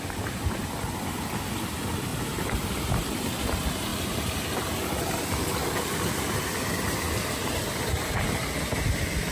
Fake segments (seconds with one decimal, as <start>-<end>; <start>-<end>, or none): none